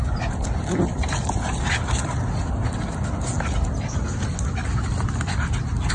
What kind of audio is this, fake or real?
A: real